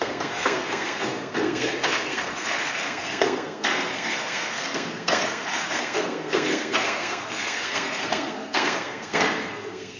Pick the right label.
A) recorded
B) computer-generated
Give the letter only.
B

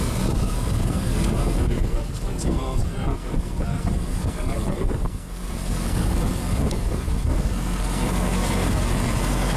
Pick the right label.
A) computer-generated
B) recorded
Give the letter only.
A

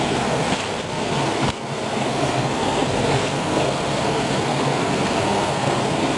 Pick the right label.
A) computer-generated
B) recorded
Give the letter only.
A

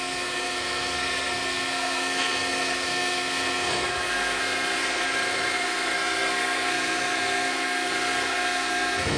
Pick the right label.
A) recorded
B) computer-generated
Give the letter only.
B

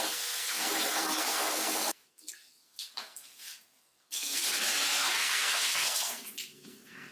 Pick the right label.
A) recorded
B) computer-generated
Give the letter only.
B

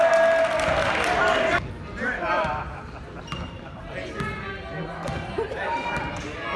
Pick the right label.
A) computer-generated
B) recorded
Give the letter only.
B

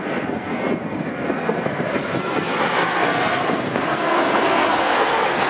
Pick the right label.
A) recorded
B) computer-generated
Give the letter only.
B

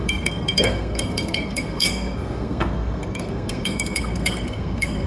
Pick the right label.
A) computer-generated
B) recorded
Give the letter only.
A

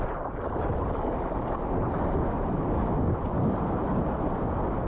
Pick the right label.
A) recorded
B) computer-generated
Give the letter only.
A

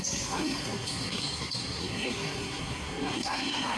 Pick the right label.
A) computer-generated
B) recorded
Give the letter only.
A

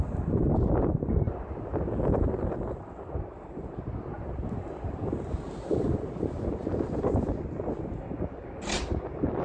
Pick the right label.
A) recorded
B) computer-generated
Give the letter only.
A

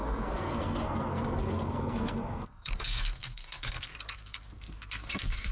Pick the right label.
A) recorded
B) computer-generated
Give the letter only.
B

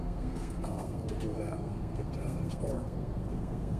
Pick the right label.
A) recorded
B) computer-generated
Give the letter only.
B